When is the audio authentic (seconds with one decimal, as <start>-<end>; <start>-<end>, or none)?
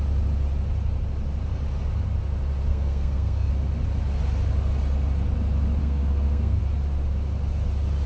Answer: 0.0-2.7; 3.5-5.8; 6.6-8.1